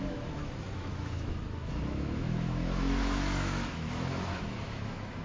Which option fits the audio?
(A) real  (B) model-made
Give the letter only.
B